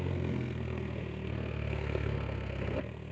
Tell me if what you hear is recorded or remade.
remade